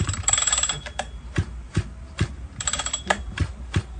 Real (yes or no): no